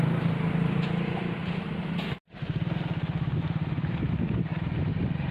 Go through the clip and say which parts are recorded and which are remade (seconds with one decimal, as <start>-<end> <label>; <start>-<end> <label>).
0.0-1.4 recorded; 1.4-4.0 remade; 4.0-4.5 recorded; 4.5-5.3 remade